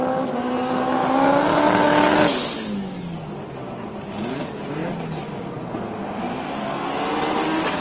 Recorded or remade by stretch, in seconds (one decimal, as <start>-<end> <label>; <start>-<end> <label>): 0.0-7.8 recorded